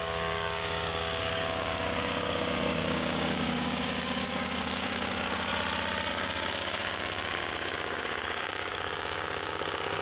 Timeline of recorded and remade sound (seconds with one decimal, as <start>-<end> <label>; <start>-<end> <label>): 0.0-5.5 remade; 5.5-6.1 recorded; 6.1-10.0 remade